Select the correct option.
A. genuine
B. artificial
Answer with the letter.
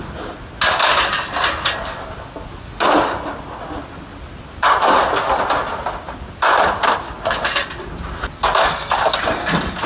A